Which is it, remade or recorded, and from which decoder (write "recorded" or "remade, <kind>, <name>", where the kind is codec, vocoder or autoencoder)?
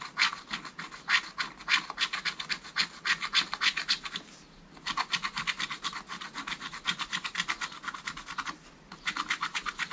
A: recorded